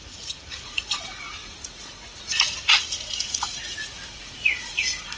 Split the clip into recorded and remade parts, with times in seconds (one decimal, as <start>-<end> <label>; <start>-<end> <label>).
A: 0.0-5.2 remade